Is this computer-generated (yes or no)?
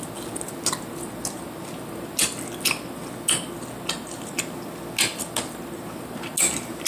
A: no